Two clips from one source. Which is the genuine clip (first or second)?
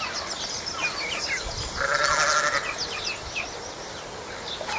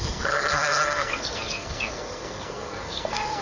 first